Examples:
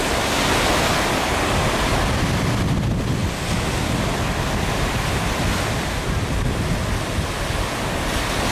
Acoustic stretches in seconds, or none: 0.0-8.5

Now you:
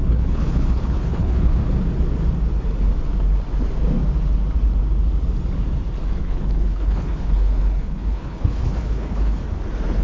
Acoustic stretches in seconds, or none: 1.6-6.2; 9.4-10.0

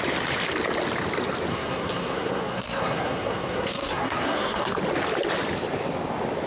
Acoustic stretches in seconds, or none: 0.0-1.5; 4.7-6.5

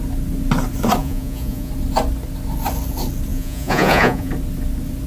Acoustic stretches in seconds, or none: 0.0-1.0; 1.7-3.3; 4.3-5.1

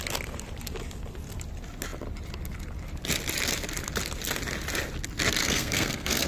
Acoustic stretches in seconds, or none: 0.0-5.4

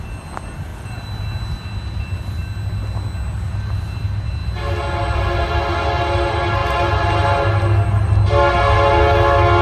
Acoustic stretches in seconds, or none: 0.0-9.6

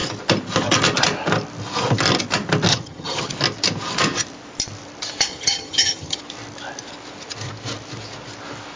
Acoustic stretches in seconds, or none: 0.0-2.7; 3.3-5.3; 6.2-8.8

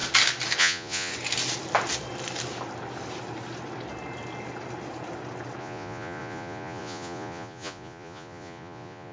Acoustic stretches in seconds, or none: 0.0-0.6; 1.1-5.6